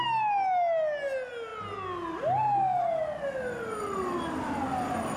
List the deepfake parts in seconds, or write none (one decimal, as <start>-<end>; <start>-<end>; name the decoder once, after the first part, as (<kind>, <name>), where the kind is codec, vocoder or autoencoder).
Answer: none